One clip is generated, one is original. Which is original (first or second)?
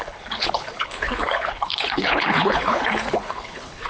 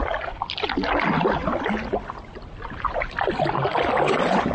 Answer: second